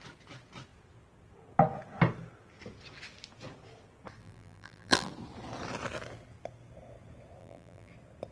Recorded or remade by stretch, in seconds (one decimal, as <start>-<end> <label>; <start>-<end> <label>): 0.0-4.2 recorded; 4.2-5.1 remade; 5.1-7.4 recorded; 7.4-7.9 remade; 7.9-8.3 recorded